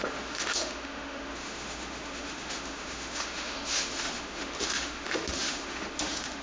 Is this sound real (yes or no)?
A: no